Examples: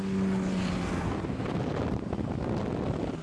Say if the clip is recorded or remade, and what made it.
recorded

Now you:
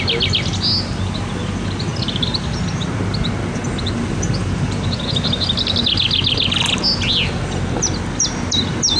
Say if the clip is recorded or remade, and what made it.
recorded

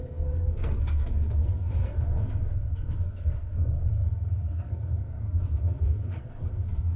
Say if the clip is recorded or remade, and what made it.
remade, codec, SNAC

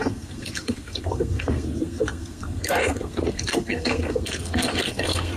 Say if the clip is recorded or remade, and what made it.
remade, codec, SNAC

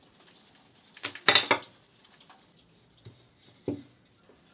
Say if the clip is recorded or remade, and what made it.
recorded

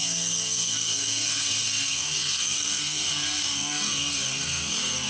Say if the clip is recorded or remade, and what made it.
remade, codec, SNAC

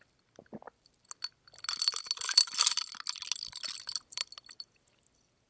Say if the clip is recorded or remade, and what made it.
recorded